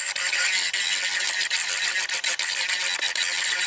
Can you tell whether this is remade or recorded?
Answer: recorded